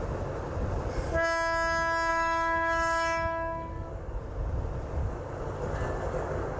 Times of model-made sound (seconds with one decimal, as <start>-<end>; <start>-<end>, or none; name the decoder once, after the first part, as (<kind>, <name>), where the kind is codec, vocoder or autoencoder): 2.1-4.2 (codec, DAC); 5.0-6.6